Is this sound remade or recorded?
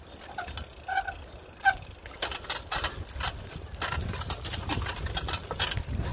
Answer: recorded